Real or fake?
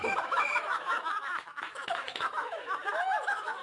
fake